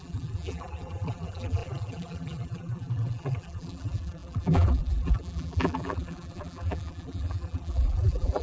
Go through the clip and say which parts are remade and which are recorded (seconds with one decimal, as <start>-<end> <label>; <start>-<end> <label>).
0.0-8.4 remade